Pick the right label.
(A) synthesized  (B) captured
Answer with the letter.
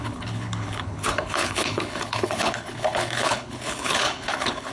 A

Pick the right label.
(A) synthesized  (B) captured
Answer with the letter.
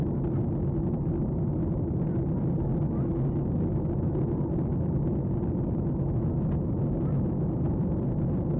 B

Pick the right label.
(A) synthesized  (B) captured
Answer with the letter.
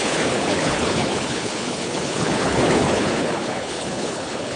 A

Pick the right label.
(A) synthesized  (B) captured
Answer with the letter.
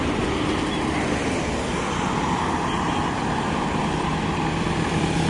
B